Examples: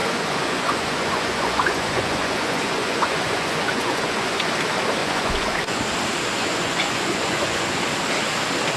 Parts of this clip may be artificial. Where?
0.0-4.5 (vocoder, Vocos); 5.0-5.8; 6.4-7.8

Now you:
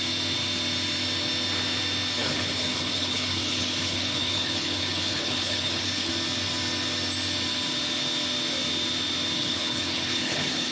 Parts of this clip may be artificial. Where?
2.2-6.1 (codec, HILCodec); 9.4-10.7

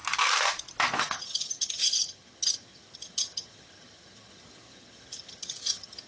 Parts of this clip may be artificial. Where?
1.0-6.1 (vocoder, HiFi-GAN)

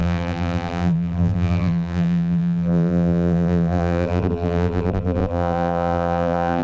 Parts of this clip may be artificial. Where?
0.0-6.6 (vocoder, BigVGAN v2)

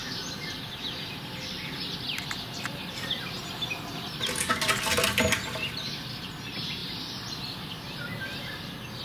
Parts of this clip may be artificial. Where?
none

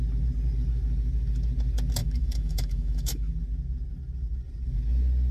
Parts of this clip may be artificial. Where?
2.0-3.3 (autoencoder, DAC-VAE)